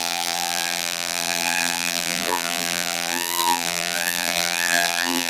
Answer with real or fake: fake